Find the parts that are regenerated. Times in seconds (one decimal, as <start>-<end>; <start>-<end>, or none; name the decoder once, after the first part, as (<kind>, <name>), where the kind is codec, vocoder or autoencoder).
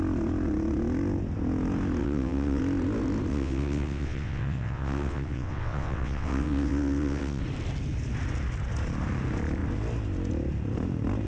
2.0-2.6 (vocoder, WaveNeXt); 3.3-7.4